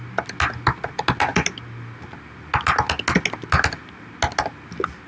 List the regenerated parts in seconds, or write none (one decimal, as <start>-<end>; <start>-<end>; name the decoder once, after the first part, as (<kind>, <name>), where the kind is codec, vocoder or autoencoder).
none